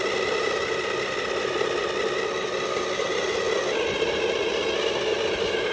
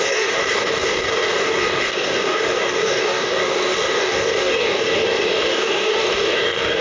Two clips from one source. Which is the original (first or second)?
first